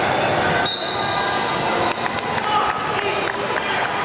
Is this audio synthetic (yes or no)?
no